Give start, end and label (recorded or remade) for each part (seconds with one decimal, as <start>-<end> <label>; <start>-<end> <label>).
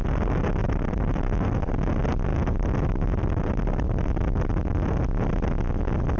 0.0-0.6 recorded; 0.6-1.7 remade; 1.7-2.3 recorded; 2.3-4.9 remade; 4.9-6.2 recorded